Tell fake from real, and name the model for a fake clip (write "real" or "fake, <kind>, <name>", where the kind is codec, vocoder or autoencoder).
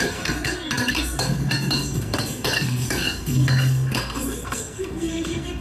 fake, codec, SNAC